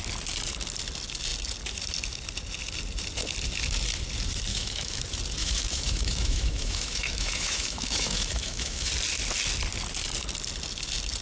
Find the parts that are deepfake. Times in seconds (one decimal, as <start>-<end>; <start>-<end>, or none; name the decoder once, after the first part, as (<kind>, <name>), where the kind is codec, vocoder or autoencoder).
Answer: 4.5-5.0 (autoencoder, DAC-VAE); 5.4-8.9